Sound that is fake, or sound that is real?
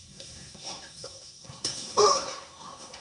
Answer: fake